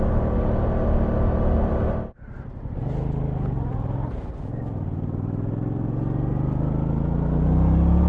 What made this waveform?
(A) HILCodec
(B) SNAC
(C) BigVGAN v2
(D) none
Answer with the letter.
D